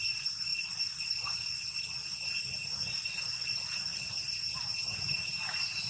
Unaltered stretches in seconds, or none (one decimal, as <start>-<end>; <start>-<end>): 0.5-4.0